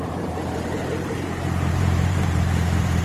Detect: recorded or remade remade